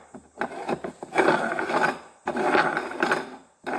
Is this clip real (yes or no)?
yes